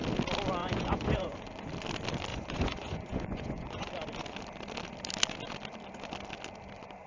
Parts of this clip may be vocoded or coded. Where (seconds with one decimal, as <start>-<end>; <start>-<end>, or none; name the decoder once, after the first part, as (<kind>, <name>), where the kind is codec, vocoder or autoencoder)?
0.6-1.4 (vocoder, Vocos); 2.3-3.9